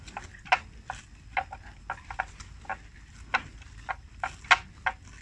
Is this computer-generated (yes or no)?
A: no